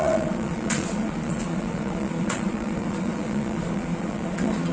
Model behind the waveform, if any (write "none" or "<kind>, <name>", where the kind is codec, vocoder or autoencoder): vocoder, Vocos